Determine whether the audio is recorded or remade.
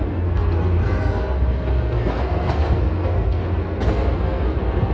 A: remade